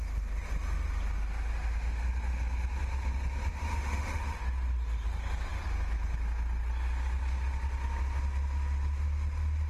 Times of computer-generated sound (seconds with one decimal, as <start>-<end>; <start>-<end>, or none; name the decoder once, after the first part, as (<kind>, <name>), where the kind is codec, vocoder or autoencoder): 1.5-2.1 (autoencoder, DAC-VAE); 3.5-4.4